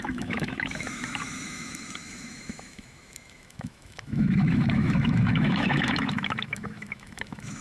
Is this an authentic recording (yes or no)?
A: no